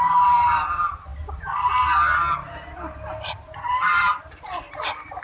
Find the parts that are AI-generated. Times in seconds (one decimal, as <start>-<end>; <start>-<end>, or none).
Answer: none